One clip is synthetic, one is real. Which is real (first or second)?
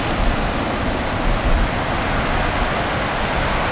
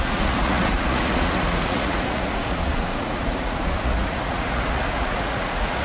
first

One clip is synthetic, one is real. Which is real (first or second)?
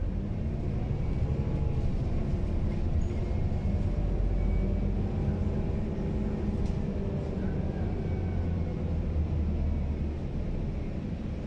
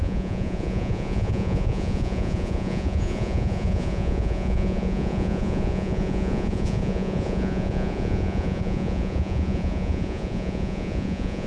first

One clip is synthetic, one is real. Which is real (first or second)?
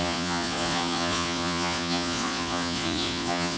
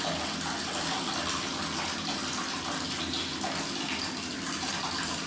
second